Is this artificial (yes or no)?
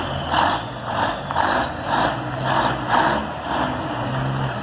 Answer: no